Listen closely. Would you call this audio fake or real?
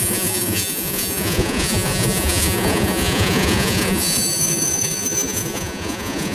fake